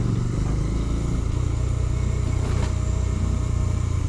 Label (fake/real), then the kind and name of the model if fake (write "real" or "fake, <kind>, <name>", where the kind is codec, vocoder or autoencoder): real